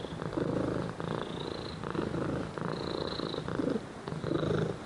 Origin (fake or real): real